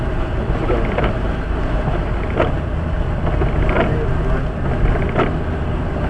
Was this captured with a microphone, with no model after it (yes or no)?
yes